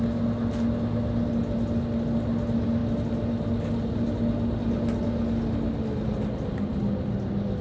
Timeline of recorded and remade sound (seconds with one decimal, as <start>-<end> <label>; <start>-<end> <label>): 0.0-7.6 recorded